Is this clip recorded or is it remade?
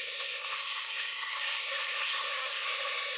remade